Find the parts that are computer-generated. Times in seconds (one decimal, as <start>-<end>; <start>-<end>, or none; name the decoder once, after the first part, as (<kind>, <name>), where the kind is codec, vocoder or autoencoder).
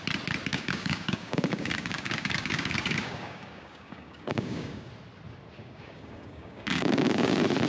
0.5-4.9 (codec, DAC); 5.6-7.3